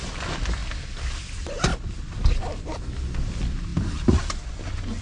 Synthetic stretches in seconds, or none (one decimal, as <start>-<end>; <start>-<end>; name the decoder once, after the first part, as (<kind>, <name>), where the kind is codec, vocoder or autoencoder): none